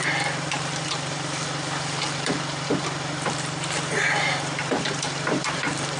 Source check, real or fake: fake